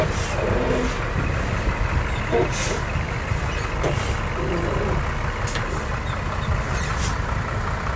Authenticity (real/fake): real